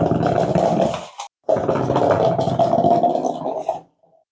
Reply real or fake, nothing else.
real